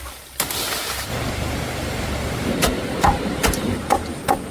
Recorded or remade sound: recorded